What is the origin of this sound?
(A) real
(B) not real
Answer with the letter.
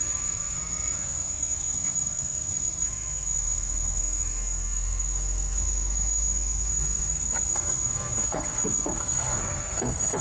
B